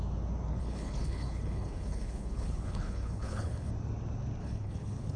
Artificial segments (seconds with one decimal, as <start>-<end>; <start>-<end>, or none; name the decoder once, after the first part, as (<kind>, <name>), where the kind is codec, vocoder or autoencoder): 0.6-3.7 (codec, HILCodec); 4.4-5.2